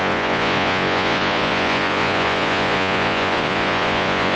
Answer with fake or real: fake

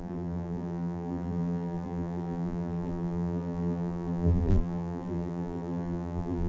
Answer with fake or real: fake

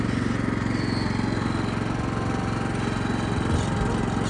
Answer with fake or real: real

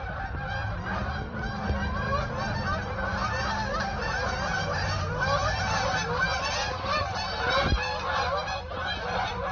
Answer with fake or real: fake